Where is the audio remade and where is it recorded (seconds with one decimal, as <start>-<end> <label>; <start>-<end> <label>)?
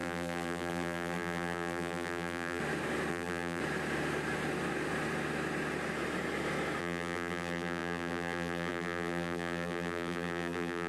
0.0-2.6 remade; 2.6-3.1 recorded; 3.1-3.6 remade; 3.6-6.8 recorded; 6.8-10.9 remade